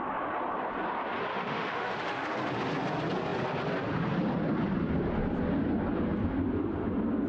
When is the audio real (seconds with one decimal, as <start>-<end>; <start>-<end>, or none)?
0.0-1.3; 2.3-7.3